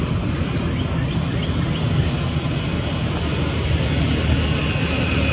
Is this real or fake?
real